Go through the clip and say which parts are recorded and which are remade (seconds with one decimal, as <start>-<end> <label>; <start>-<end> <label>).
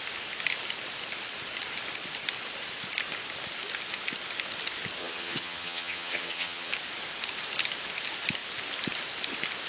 0.0-5.0 recorded; 5.0-6.7 remade; 6.7-9.7 recorded